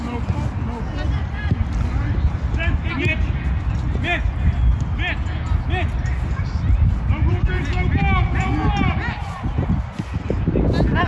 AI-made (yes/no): no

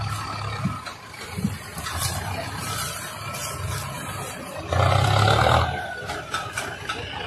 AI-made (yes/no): no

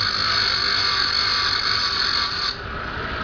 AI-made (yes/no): no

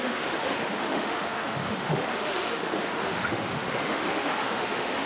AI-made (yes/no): yes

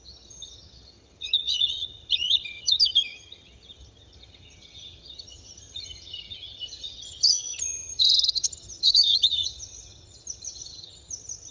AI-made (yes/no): yes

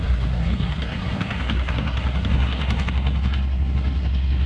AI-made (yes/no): yes